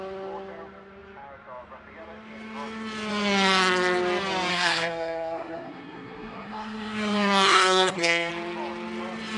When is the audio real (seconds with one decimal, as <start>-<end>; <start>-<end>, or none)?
0.0-4.5; 8.3-9.4